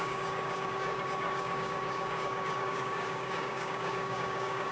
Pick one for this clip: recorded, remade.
remade